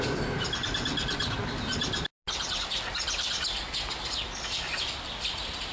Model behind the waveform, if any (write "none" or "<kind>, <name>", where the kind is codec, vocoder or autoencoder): none